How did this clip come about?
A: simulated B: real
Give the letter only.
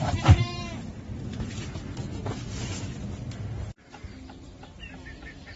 B